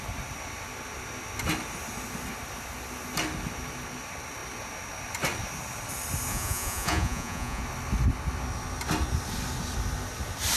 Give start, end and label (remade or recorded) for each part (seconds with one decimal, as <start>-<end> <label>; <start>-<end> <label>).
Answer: 0.0-6.3 recorded; 6.3-7.6 remade; 7.6-10.6 recorded